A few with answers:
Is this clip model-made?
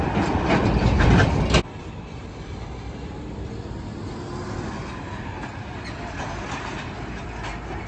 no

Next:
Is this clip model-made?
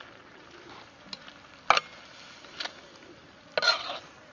no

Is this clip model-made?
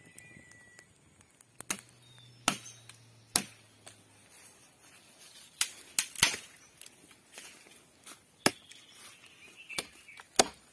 no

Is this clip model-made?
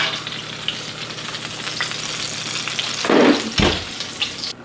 no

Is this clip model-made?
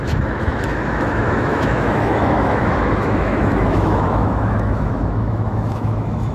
yes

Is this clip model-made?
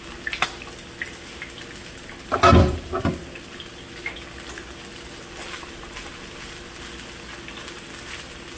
no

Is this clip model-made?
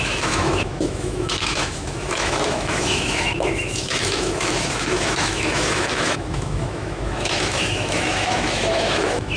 yes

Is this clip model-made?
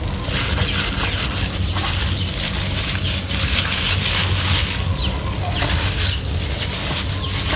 no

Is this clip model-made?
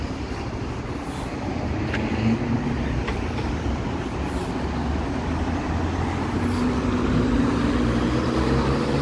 no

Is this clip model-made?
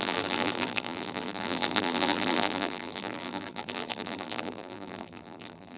yes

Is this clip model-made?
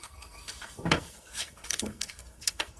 yes